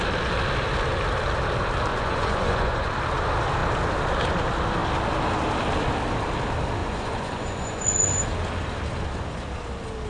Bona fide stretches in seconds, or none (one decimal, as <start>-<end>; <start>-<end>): 0.0-1.9; 2.9-6.8; 8.0-10.1